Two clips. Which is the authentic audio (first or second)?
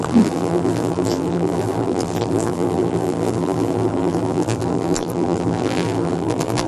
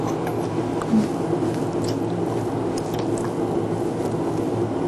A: second